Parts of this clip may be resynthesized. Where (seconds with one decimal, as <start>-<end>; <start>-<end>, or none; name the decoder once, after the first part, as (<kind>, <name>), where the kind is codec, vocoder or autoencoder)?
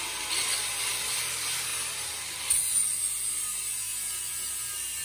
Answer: none